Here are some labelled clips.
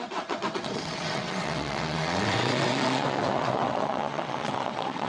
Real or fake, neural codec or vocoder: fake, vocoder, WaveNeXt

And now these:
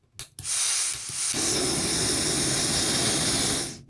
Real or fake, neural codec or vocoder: real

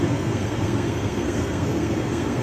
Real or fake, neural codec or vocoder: fake, codec, SNAC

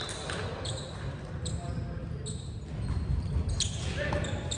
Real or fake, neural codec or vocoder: real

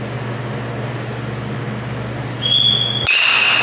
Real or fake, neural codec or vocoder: real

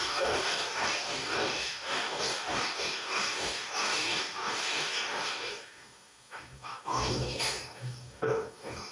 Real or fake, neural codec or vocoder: fake, codec, DAC